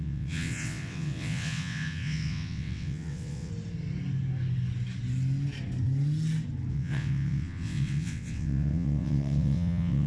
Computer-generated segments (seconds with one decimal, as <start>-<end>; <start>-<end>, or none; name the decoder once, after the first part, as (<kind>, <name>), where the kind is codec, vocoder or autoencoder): 0.0-3.5 (vocoder, WaveNeXt); 6.7-10.1